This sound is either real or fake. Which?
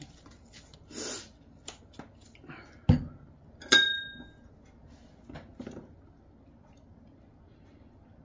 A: real